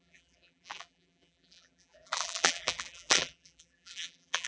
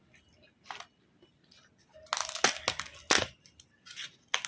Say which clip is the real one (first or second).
second